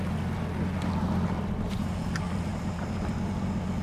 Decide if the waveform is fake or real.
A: real